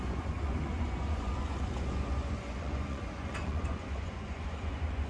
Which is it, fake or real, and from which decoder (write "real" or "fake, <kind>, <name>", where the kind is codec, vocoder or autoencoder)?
fake, vocoder, Vocos